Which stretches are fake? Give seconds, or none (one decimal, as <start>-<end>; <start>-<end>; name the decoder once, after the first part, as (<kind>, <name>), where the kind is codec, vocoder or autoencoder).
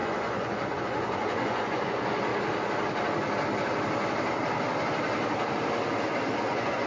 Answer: 0.0-2.3 (vocoder, Vocos); 6.4-6.9